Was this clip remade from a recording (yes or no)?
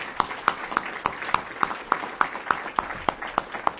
no